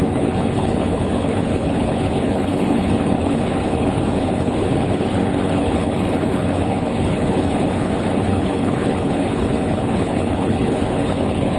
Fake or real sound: fake